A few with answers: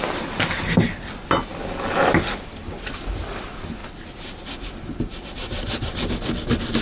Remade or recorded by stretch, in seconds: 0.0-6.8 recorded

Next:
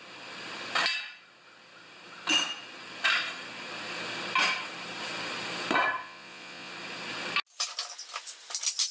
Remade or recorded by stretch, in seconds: 0.0-6.0 recorded; 6.0-6.7 remade; 6.7-8.9 recorded

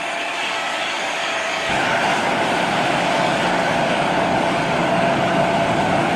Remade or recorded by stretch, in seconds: 0.0-2.1 remade; 2.1-3.2 recorded; 3.2-6.2 remade